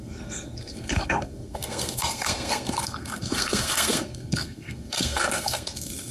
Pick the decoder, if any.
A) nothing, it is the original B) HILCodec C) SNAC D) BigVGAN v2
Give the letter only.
C